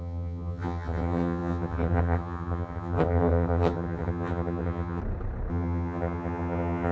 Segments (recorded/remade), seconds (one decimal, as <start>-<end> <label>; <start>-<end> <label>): 0.0-5.0 remade; 5.0-5.5 recorded; 5.5-6.9 remade